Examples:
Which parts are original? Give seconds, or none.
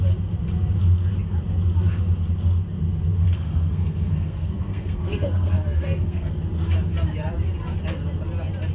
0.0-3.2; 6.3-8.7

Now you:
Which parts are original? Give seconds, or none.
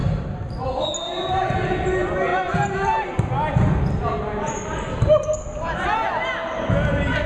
0.7-2.3; 3.3-7.3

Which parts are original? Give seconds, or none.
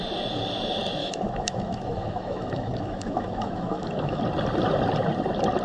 0.0-1.0; 4.2-5.6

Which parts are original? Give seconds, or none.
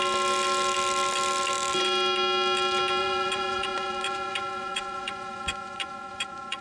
0.0-3.0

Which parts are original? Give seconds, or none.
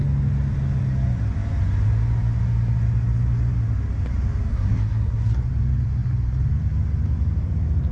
0.0-4.5; 5.3-7.9